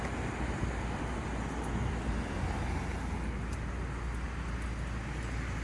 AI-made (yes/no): no